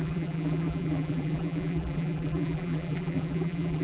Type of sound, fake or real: fake